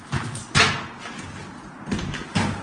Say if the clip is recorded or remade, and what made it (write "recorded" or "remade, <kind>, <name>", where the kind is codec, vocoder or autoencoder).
recorded